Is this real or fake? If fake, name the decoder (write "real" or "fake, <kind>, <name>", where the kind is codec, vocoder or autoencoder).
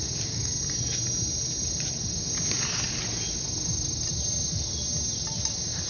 real